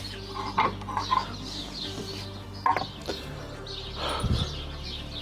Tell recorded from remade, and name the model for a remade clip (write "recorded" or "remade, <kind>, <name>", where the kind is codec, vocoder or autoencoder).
recorded